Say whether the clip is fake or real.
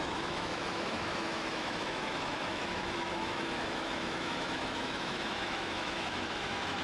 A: fake